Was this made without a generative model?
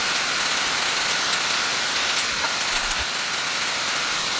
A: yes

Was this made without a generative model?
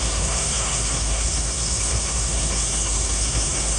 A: no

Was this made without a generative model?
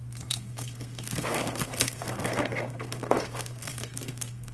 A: no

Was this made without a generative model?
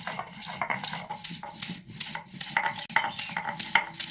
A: yes